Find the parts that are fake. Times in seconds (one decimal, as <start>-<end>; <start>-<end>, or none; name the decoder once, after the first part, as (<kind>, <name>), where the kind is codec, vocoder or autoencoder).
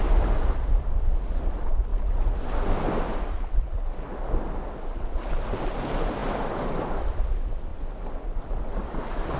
6.2-7.3 (vocoder, BigVGAN v2)